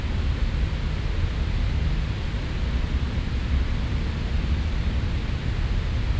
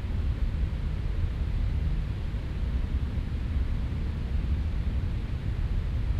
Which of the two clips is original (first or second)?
first